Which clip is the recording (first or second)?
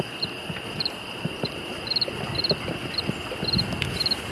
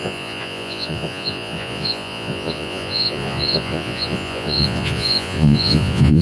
first